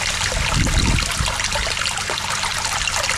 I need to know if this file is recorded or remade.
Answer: recorded